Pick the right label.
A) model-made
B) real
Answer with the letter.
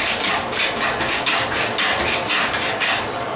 B